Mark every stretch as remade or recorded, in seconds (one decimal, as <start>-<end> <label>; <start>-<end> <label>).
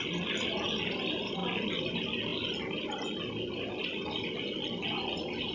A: 0.0-5.5 recorded